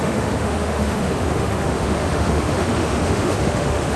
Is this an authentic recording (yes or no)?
no